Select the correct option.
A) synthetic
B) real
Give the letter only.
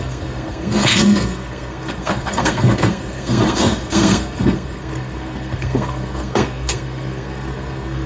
A